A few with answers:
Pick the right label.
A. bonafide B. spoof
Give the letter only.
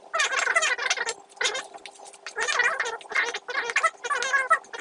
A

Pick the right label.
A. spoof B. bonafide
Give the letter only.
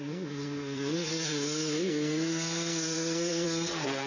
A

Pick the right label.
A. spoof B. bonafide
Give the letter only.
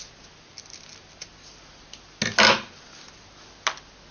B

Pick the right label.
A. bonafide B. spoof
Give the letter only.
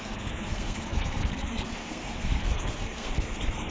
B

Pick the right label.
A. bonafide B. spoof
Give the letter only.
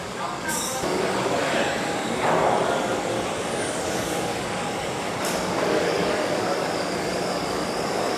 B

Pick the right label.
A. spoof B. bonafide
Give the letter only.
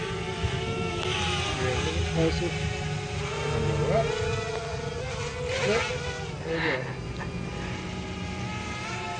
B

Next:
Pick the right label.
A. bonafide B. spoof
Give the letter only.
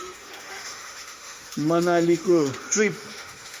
B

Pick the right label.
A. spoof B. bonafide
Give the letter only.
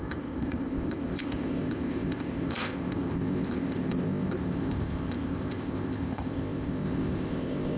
A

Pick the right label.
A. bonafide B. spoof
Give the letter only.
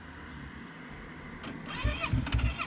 A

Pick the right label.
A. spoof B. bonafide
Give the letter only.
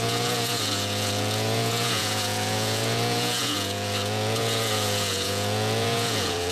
A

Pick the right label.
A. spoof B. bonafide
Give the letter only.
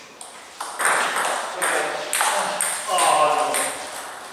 B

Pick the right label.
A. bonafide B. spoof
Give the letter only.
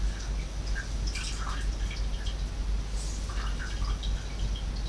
A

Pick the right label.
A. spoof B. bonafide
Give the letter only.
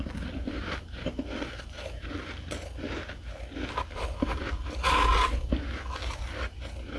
B